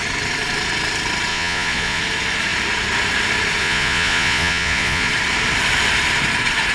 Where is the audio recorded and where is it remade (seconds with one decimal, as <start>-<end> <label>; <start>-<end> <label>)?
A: 0.0-1.3 recorded; 1.3-2.0 remade; 2.0-3.6 recorded; 3.6-5.1 remade; 5.1-6.7 recorded